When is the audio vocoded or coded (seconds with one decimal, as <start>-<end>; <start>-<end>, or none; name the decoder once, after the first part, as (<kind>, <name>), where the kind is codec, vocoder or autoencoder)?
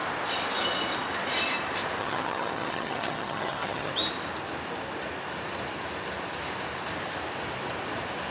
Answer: 2.0-3.9 (vocoder, HiFi-GAN)